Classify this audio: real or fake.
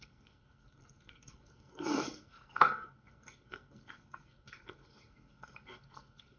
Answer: fake